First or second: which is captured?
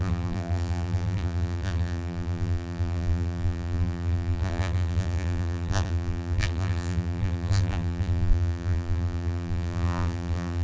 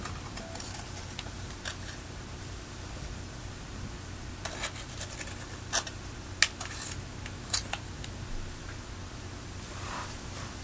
second